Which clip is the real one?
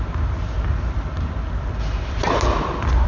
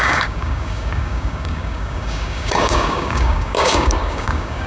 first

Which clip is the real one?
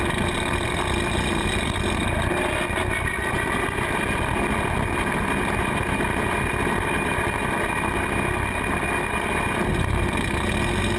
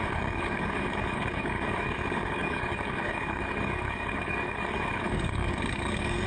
first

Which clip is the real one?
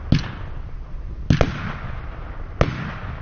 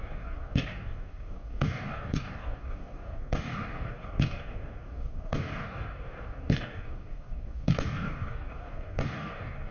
first